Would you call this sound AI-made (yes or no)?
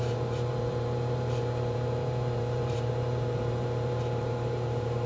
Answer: yes